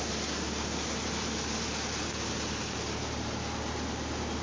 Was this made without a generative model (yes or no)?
yes